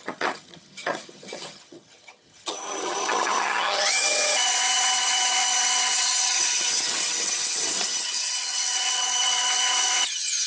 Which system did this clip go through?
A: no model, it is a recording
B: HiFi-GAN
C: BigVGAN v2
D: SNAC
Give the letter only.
B